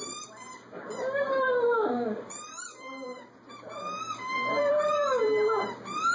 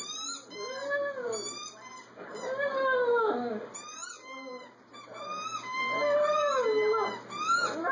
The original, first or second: second